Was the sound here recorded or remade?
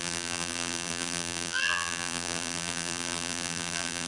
remade